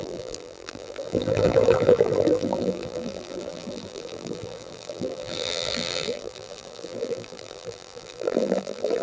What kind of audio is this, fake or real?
fake